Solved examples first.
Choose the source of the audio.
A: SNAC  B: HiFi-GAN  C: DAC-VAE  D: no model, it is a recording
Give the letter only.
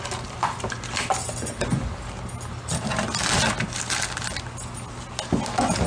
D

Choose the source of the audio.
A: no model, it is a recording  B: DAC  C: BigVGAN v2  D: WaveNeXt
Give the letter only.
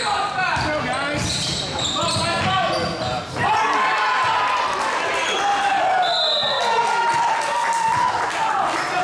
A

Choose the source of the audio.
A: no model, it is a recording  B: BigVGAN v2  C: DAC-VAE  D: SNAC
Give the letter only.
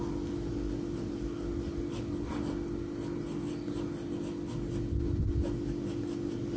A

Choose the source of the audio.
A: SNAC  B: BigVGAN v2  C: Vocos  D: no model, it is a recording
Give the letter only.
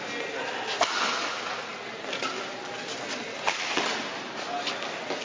D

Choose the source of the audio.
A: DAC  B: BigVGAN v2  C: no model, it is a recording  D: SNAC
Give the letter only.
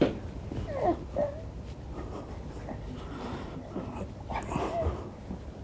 C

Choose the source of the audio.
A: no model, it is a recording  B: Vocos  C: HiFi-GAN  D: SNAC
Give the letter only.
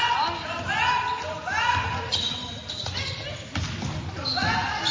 A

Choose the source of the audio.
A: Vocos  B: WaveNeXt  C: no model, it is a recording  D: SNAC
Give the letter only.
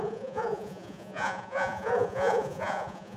A